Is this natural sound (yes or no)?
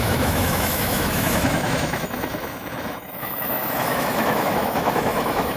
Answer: no